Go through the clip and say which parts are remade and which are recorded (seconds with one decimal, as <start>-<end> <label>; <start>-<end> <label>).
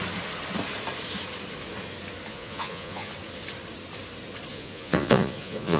0.0-2.3 recorded; 2.3-3.1 remade; 3.1-4.5 recorded; 4.5-5.8 remade